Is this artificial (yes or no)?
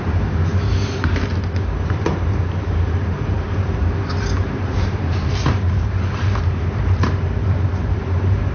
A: yes